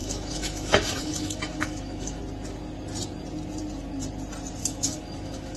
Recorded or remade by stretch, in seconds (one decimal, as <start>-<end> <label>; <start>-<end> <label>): 0.0-2.2 remade; 2.2-4.6 recorded; 4.6-5.6 remade